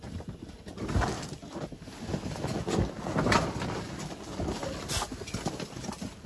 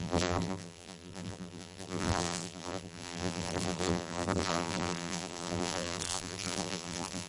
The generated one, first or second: second